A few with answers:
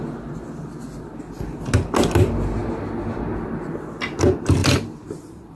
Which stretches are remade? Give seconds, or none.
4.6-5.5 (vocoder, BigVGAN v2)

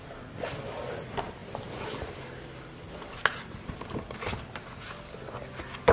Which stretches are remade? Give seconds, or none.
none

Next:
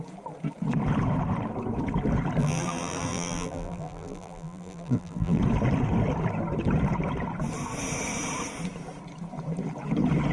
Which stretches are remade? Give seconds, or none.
2.4-5.4 (vocoder, BigVGAN v2)

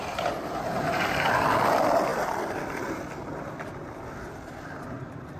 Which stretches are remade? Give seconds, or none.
0.0-5.4 (vocoder, BigVGAN v2)

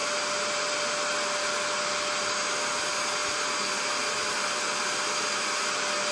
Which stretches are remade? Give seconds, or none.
none

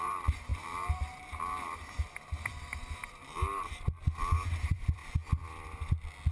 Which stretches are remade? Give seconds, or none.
0.0-5.0 (vocoder, BigVGAN v2)

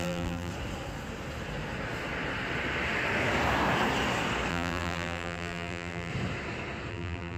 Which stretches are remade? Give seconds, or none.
0.0-0.5 (vocoder, BigVGAN v2); 4.5-6.1; 6.9-7.4

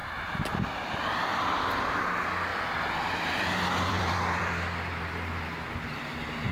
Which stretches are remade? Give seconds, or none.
0.0-1.8 (vocoder, BigVGAN v2); 2.5-5.8